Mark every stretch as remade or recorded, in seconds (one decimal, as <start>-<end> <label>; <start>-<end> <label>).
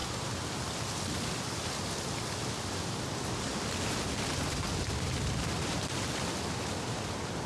0.0-7.5 recorded